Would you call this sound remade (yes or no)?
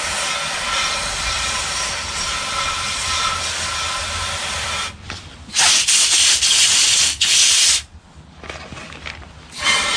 no